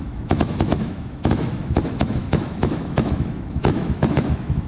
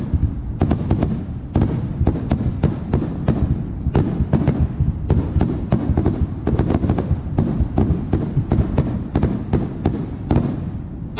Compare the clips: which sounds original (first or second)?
second